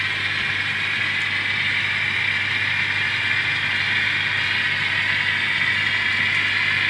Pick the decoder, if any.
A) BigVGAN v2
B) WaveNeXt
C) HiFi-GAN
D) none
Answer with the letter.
D